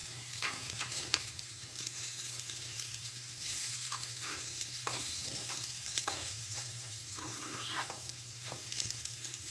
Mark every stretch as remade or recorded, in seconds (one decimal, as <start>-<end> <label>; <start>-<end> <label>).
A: 0.0-9.5 remade